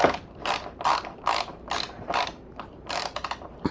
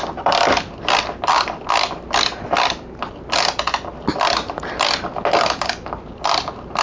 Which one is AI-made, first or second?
first